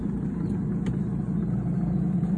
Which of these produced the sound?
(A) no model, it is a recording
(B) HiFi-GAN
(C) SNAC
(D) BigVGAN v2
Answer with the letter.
A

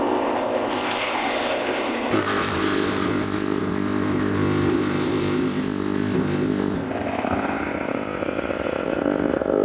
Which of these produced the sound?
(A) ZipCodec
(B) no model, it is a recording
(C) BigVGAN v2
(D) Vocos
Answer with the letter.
A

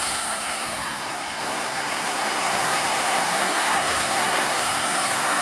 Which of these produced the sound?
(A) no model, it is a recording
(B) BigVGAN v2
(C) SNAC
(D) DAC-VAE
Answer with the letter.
C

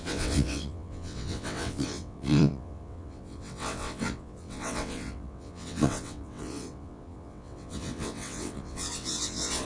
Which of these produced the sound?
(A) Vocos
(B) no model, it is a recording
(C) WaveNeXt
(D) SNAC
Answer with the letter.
C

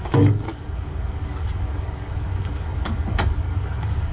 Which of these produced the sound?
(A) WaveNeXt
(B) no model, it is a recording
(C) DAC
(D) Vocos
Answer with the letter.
C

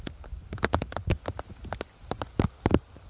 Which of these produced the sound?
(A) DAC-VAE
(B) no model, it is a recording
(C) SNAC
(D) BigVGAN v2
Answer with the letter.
B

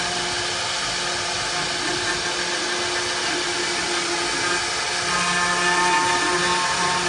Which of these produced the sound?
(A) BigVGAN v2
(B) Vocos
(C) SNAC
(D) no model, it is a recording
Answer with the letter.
D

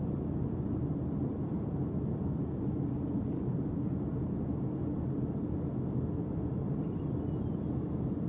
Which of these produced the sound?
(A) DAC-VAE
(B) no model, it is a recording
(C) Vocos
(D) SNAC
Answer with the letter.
B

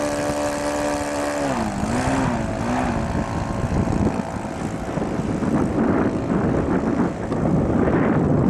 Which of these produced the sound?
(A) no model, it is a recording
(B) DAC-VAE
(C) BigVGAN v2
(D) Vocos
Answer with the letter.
A